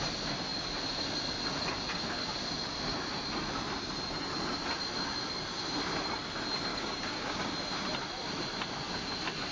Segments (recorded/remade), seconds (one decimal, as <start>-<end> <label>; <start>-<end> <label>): 0.0-6.7 recorded; 6.7-7.5 remade; 7.5-9.5 recorded